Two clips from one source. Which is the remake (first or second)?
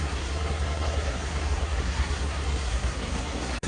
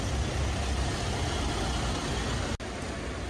first